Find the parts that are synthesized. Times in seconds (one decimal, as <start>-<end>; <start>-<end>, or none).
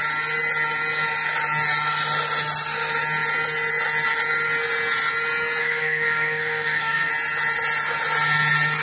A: 5.6-7.1